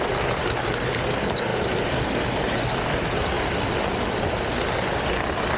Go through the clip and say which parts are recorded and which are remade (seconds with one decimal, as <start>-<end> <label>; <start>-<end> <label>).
0.0-5.6 recorded

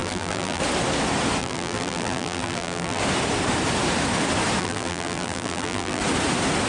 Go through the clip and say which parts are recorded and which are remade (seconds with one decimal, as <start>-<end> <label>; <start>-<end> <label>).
0.0-0.6 remade; 0.6-1.4 recorded; 1.4-3.0 remade; 3.0-4.6 recorded; 4.6-6.0 remade; 6.0-6.7 recorded

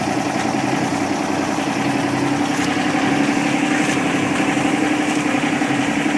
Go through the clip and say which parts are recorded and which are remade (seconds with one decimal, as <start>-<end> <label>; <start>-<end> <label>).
0.0-0.9 remade; 0.9-4.6 recorded; 4.6-6.2 remade

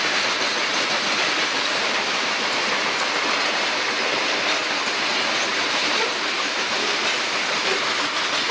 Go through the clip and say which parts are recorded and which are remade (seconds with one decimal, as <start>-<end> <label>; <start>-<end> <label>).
0.0-0.7 recorded; 0.7-4.2 remade; 4.2-5.5 recorded; 5.5-7.0 remade; 7.0-8.5 recorded